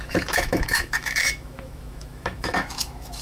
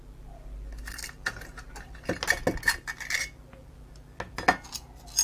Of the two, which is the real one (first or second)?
second